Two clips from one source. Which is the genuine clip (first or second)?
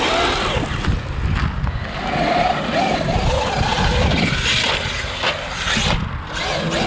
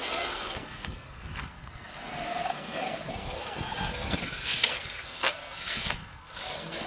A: first